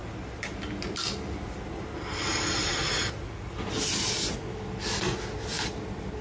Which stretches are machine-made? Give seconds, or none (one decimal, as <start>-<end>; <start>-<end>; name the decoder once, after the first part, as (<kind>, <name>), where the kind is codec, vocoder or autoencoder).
none